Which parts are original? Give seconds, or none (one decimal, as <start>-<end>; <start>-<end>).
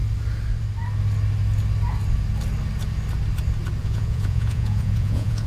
0.0-3.8